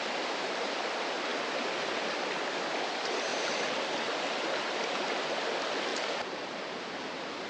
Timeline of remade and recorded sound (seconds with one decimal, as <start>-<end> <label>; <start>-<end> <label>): 0.0-3.3 recorded; 3.3-5.5 remade; 5.5-5.9 recorded; 5.9-7.1 remade; 7.1-7.5 recorded